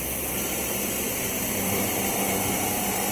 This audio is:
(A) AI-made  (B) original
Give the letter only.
A